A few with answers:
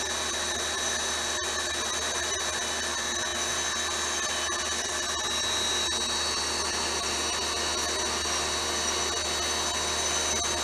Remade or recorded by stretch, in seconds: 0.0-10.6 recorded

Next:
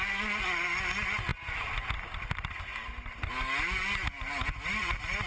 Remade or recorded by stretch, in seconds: 0.0-5.3 recorded

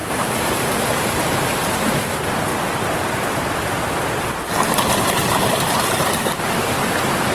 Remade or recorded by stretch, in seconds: 0.0-2.5 remade; 2.5-4.5 recorded; 4.5-7.3 remade

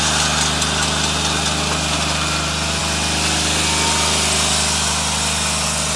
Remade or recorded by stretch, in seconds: 0.0-6.0 recorded

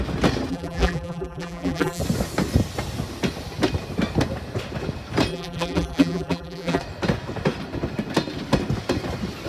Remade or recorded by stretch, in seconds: 0.0-0.5 recorded; 0.5-2.0 remade; 2.0-5.3 recorded; 5.3-6.8 remade; 6.8-9.5 recorded